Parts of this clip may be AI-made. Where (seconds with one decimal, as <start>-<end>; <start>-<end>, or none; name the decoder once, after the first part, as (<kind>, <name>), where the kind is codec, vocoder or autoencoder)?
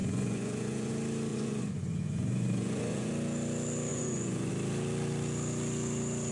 0.0-0.9 (vocoder, Vocos); 1.3-3.1; 3.9-4.5